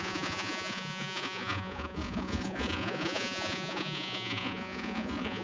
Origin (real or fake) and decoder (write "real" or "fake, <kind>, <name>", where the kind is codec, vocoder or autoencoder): fake, vocoder, Vocos